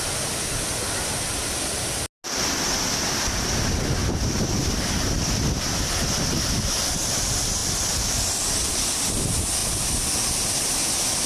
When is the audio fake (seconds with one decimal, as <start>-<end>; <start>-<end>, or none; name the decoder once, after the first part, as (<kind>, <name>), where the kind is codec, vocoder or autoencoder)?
none